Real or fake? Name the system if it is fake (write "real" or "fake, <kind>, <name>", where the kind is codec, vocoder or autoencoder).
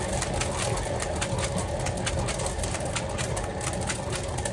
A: real